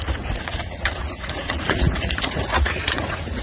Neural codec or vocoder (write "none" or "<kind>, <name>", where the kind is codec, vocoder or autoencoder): vocoder, Vocos